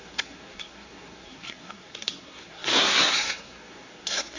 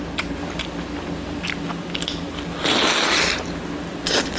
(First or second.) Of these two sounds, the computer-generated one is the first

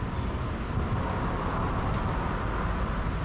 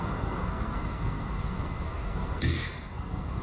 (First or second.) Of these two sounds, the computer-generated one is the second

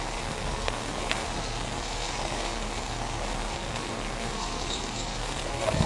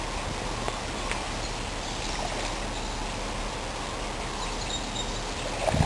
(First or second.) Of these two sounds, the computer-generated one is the first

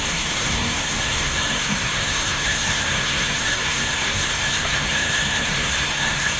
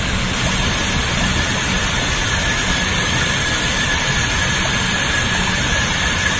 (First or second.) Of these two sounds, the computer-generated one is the first